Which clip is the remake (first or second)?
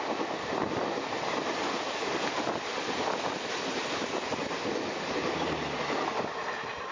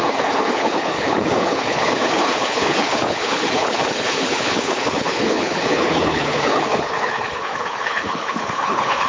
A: second